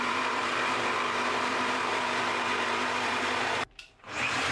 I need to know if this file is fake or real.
fake